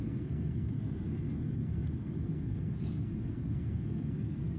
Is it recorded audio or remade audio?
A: remade